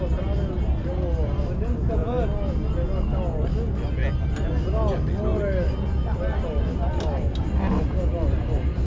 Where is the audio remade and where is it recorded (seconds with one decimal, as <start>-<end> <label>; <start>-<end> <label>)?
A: 0.0-8.9 recorded